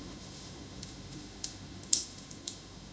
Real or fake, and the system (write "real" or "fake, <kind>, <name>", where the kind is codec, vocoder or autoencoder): fake, autoencoder, DAC-VAE